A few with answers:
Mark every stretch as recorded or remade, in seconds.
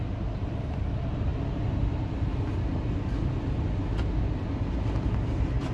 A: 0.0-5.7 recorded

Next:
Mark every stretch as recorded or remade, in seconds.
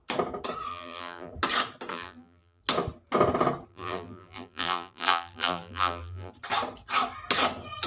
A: 0.0-0.7 recorded; 0.7-1.3 remade; 1.3-1.9 recorded; 1.9-2.6 remade; 2.6-3.7 recorded; 3.7-6.3 remade; 6.3-7.9 recorded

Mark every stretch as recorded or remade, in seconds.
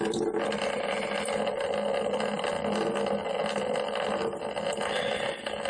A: 0.0-5.7 recorded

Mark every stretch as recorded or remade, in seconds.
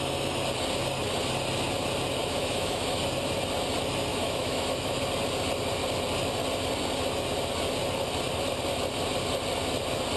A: 0.0-2.2 recorded; 2.2-3.0 remade; 3.0-4.1 recorded; 4.1-5.0 remade; 5.0-10.2 recorded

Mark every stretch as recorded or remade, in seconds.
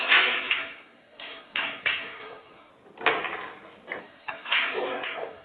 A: 0.0-2.7 remade; 2.7-4.0 recorded; 4.0-5.4 remade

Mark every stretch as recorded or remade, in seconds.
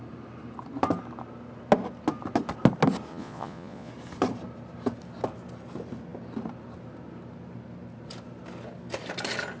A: 0.0-3.1 recorded; 3.1-3.9 remade; 3.9-9.6 recorded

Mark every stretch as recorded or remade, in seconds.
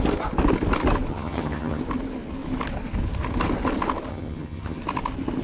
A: 0.0-1.1 recorded; 1.1-1.8 remade; 1.8-4.1 recorded; 4.1-4.8 remade; 4.8-5.4 recorded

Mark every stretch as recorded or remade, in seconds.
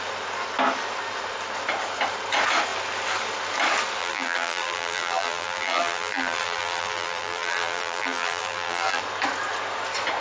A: 0.0-4.0 recorded; 4.0-9.0 remade; 9.0-10.2 recorded